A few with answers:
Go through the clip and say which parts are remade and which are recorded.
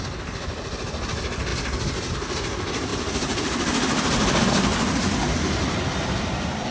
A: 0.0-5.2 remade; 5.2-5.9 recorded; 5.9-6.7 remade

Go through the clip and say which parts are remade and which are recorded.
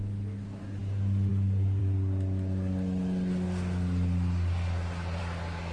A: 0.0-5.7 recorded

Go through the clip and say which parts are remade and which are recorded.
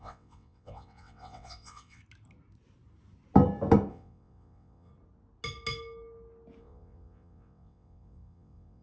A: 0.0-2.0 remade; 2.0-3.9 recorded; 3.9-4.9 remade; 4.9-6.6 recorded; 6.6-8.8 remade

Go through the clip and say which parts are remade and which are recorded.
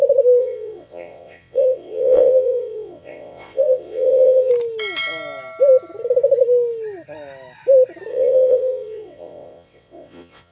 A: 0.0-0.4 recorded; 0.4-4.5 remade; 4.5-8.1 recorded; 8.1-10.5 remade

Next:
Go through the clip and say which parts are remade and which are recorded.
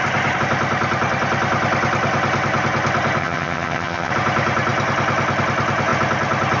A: 0.0-3.2 recorded; 3.2-4.1 remade; 4.1-6.6 recorded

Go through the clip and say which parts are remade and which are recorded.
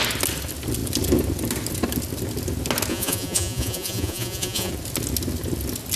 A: 0.0-2.9 recorded; 2.9-4.7 remade; 4.7-6.0 recorded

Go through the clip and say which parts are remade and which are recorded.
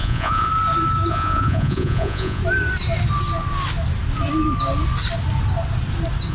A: 0.0-0.5 remade; 0.5-1.1 recorded; 1.1-2.4 remade; 2.4-6.3 recorded